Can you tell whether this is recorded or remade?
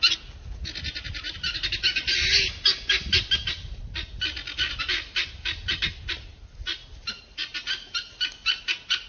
recorded